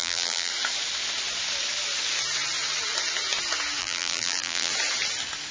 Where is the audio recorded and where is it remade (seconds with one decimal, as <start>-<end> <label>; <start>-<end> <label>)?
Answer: 0.0-0.5 remade; 0.5-3.8 recorded; 3.8-4.7 remade; 4.7-5.5 recorded